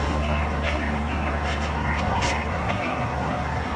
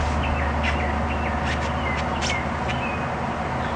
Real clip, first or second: second